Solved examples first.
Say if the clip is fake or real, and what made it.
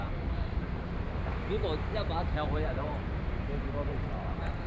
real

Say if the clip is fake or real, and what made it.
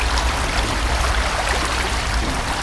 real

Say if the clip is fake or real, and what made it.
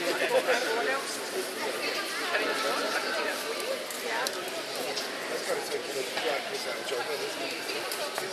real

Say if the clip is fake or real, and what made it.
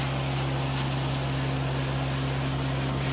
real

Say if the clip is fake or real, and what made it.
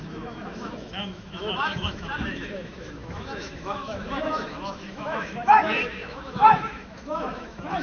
fake, autoencoder, DAC-VAE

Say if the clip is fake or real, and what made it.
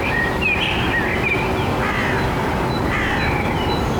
real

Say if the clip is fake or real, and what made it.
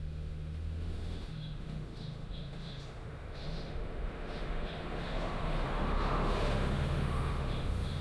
fake, autoencoder, DAC-VAE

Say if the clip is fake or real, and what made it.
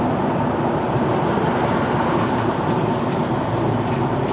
real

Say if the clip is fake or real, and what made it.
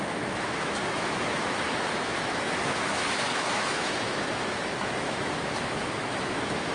fake, autoencoder, DAC-VAE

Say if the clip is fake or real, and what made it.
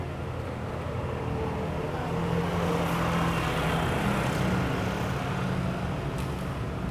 real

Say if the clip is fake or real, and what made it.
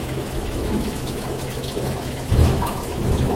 fake, autoencoder, DAC-VAE